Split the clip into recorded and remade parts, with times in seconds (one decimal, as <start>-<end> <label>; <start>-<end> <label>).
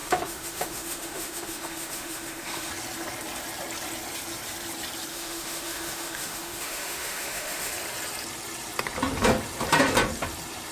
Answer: 0.0-2.7 remade; 2.7-5.1 recorded; 5.1-7.7 remade; 7.7-10.7 recorded